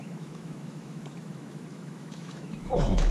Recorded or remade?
remade